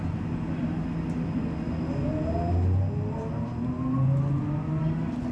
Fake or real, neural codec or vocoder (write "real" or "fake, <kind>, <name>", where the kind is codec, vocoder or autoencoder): real